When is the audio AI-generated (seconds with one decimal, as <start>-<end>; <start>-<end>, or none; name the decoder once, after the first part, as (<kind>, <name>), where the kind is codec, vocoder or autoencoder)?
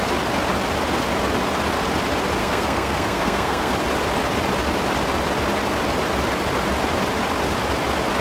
2.4-3.7 (codec, SNAC)